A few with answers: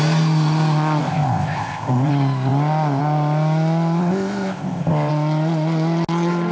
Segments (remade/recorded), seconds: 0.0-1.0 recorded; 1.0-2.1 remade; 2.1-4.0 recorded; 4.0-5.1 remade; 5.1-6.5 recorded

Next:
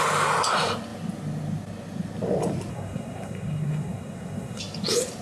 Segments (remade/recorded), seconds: 0.0-2.7 recorded; 2.7-4.6 remade; 4.6-5.2 recorded